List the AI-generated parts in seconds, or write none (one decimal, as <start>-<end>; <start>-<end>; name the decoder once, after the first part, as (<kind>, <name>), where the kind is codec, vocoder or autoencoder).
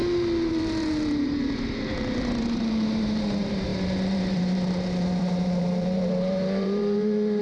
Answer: 0.0-7.4 (vocoder, BigVGAN v2)